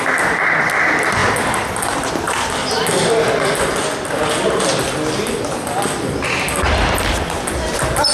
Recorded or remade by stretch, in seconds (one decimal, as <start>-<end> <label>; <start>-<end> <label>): 0.0-8.1 recorded